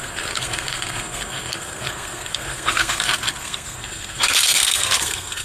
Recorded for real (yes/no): no